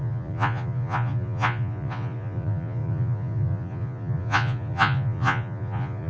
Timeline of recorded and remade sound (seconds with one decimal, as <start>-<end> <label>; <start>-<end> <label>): 0.0-6.1 remade